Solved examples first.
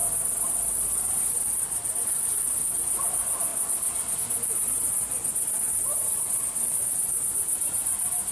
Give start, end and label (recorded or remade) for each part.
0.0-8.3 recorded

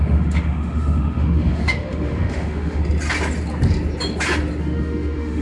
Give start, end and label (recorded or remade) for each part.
0.0-2.8 remade; 2.8-4.6 recorded; 4.6-5.4 remade

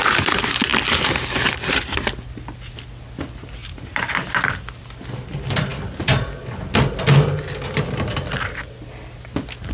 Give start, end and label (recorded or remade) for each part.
0.0-3.6 recorded; 3.6-4.3 remade; 4.3-9.7 recorded

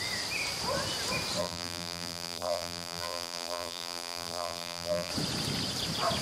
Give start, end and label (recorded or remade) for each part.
0.0-1.4 recorded; 1.4-5.1 remade; 5.1-6.2 recorded

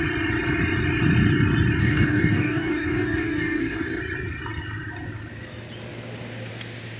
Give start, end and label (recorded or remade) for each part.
0.0-1.8 recorded; 1.8-4.0 remade; 4.0-7.0 recorded